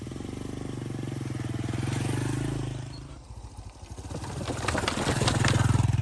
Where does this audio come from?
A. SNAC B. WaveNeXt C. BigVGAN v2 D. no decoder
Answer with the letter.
D